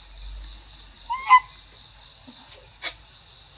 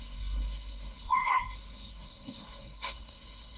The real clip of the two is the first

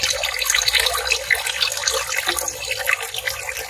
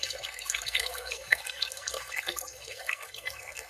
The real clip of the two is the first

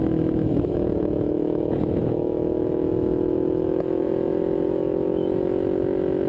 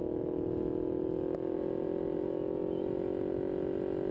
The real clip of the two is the second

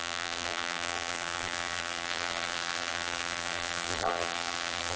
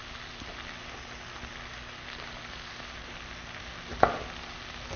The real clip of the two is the second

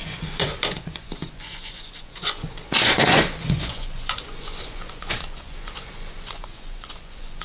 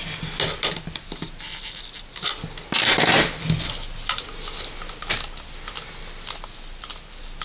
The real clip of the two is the second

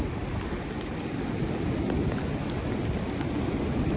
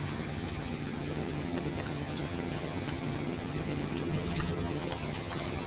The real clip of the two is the first